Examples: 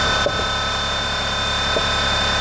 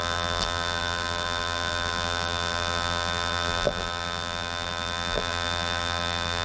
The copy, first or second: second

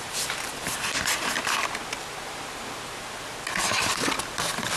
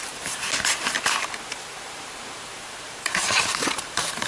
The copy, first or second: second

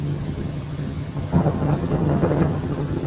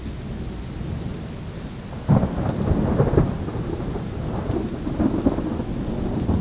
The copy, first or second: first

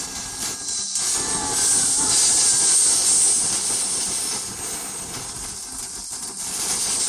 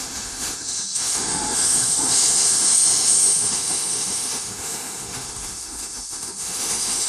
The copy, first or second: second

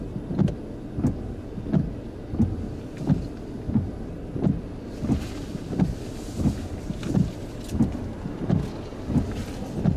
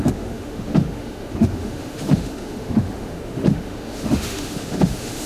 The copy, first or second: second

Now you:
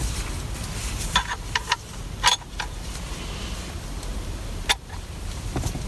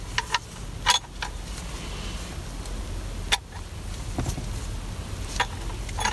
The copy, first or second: first